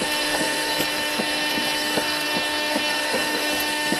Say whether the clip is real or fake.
fake